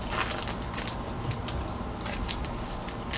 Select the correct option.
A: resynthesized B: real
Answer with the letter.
B